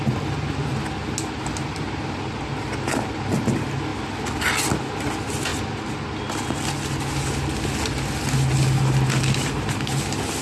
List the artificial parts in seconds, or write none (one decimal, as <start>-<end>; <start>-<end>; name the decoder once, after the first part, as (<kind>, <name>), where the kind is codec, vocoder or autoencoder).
none